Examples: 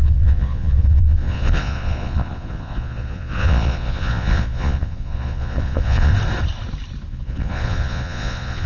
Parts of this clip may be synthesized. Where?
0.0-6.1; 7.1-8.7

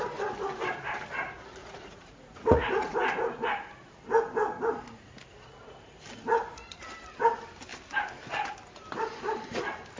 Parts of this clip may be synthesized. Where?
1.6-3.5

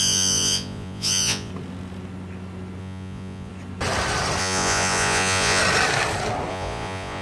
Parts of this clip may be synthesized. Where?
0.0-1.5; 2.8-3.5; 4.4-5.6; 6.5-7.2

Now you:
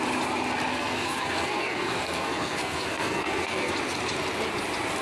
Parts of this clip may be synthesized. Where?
0.7-3.7